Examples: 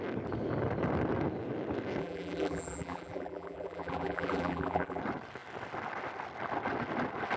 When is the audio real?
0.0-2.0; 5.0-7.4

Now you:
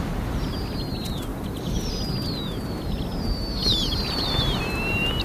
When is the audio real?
0.0-3.6; 4.6-5.2

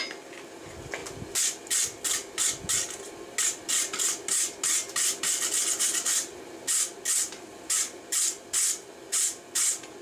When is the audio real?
0.0-10.0

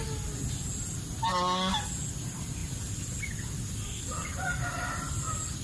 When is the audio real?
0.0-5.6

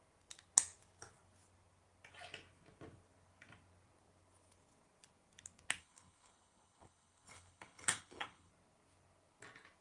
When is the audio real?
0.0-5.8; 8.5-9.8

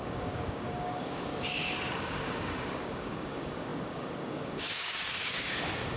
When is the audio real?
1.3-1.9